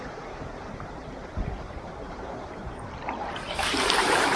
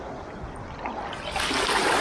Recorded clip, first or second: second